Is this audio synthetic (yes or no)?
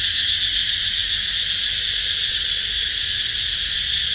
no